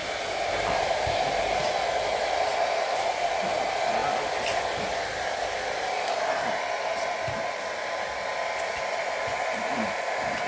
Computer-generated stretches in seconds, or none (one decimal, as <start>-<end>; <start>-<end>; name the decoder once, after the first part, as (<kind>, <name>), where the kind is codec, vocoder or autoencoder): 0.0-1.4 (vocoder, BigVGAN v2); 2.5-3.3